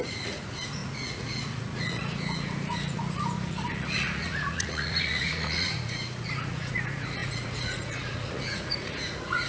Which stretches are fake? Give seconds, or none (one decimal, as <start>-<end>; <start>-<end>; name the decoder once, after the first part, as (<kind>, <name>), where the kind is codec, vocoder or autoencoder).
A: 0.0-9.5 (vocoder, Vocos)